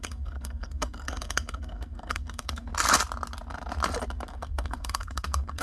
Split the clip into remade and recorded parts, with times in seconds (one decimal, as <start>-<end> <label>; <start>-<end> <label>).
0.0-2.7 remade; 2.7-4.3 recorded; 4.3-5.6 remade